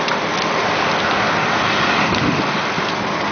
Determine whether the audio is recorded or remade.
recorded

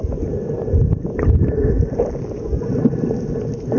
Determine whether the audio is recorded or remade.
recorded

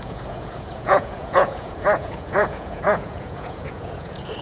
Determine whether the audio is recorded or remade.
remade